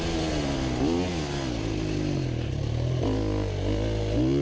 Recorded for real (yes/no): yes